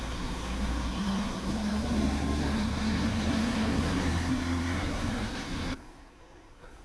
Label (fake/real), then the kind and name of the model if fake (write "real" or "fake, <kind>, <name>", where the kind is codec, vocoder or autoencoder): fake, codec, SNAC